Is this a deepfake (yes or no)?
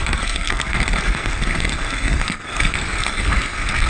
yes